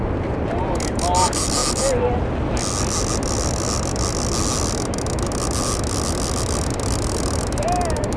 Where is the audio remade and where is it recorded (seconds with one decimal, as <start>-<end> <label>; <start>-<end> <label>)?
0.0-8.2 recorded

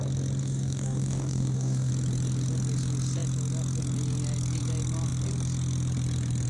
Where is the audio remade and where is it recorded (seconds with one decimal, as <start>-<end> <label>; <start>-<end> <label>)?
0.0-0.4 recorded; 0.4-1.9 remade; 1.9-6.5 recorded